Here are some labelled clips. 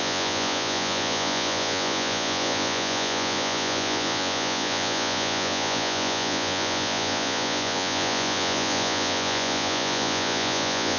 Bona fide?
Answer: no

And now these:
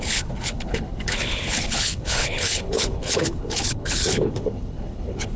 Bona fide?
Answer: no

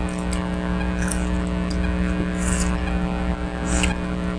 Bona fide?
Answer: yes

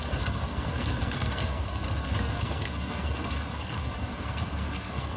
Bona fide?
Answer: no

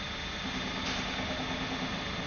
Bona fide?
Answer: yes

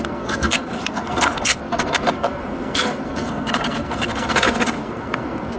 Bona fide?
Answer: no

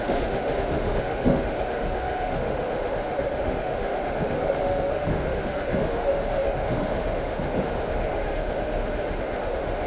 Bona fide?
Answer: no